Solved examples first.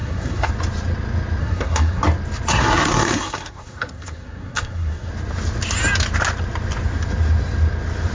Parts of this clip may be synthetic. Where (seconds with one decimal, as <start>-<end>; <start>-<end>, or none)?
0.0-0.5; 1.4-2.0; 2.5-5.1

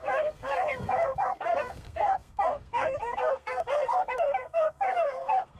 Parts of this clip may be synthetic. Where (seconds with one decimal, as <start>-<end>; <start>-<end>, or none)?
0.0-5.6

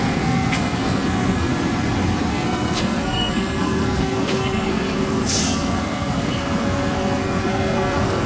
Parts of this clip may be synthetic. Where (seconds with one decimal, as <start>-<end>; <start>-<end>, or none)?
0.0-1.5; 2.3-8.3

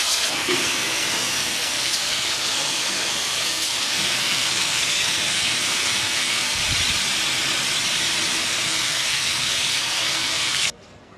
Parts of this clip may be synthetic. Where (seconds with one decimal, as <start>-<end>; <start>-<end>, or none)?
0.0-6.6; 8.3-11.2

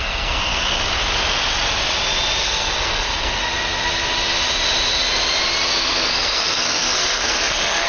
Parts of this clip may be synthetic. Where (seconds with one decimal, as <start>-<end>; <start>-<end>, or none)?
0.0-1.0; 2.4-3.4; 5.8-7.9